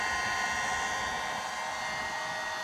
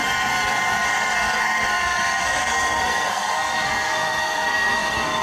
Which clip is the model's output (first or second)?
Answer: second